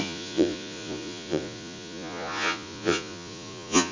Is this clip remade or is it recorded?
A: remade